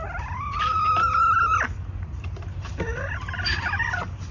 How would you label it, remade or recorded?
recorded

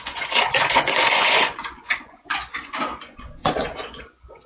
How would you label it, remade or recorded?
remade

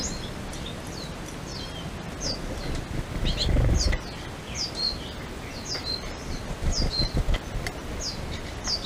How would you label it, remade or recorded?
recorded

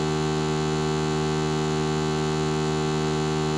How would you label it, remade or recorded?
recorded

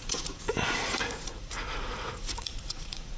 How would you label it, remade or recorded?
remade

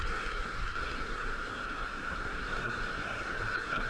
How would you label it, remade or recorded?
remade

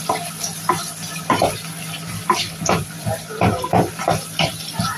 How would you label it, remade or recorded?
remade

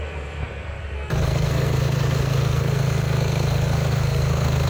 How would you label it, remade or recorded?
remade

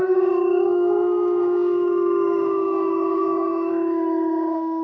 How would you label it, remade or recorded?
remade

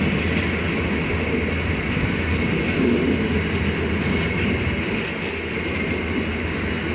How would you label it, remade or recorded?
recorded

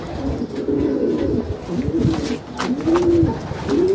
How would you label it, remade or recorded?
recorded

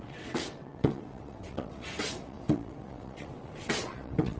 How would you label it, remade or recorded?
remade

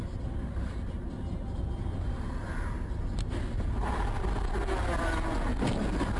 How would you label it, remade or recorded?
recorded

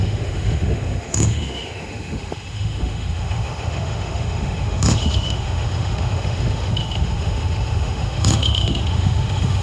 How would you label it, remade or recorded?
remade